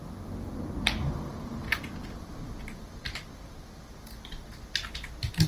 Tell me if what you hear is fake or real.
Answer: real